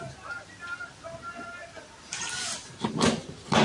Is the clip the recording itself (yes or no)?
yes